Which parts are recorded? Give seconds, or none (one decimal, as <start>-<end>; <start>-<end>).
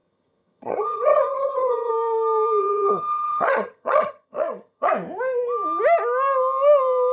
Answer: 1.9-2.6; 4.9-7.1